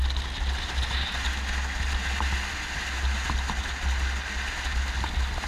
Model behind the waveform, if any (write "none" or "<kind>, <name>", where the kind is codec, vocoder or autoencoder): none